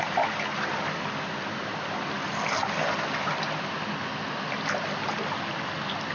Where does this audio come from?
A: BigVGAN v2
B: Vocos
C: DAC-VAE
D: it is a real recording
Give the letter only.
D